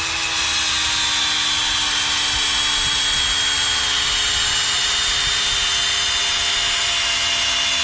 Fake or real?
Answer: real